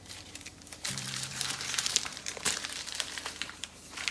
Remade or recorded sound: remade